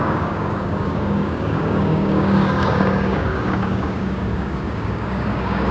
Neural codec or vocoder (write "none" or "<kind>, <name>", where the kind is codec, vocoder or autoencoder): codec, DAC